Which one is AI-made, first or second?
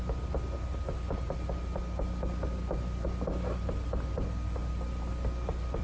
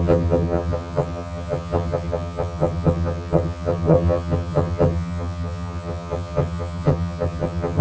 second